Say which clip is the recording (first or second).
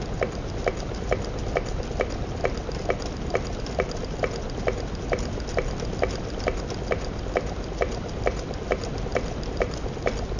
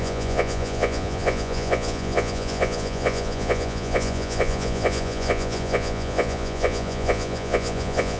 first